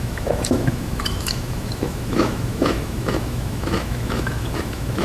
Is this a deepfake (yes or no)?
yes